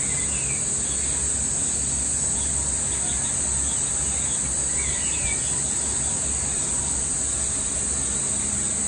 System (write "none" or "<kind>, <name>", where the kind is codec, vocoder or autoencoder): none